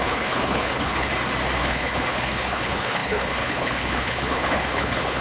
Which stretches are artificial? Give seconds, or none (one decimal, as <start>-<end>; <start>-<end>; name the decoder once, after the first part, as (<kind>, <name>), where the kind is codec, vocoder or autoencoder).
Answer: 0.0-1.1 (codec, HILCodec); 1.6-5.2

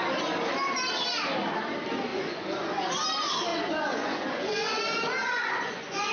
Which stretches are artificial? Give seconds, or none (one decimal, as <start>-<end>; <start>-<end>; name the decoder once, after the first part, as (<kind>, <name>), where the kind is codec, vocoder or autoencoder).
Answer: 2.1-2.9 (vocoder, Vocos); 3.5-4.8; 5.2-6.1

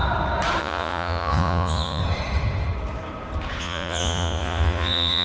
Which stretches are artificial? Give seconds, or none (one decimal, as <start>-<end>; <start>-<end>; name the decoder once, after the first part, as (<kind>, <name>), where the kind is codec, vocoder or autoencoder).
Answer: 0.6-2.0 (vocoder, Vocos); 3.6-5.2

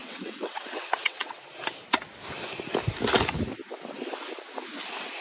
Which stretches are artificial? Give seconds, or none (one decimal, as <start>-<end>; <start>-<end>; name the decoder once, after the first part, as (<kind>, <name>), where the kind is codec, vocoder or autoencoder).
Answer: 0.0-1.4 (vocoder, WaveNeXt)

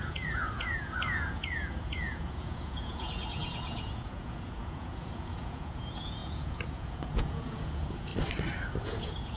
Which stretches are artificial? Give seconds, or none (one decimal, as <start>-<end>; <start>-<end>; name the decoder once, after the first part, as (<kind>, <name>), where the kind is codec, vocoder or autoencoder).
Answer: 0.0-8.1 (vocoder, Vocos); 8.8-9.4

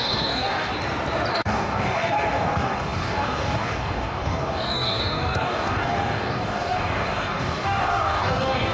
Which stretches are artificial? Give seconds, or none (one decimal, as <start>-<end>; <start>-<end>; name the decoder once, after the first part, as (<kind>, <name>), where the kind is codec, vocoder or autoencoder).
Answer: 0.0-0.7 (codec, DAC); 1.3-8.7

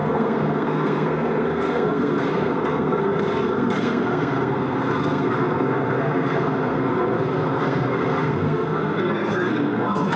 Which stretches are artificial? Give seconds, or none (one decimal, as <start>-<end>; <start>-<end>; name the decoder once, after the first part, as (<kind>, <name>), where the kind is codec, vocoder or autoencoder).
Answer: 0.0-10.2 (codec, SNAC)

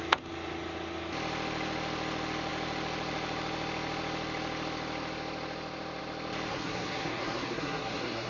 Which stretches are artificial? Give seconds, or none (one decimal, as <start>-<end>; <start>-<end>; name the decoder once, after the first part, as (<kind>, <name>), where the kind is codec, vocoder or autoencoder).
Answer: 6.5-8.3 (codec, SNAC)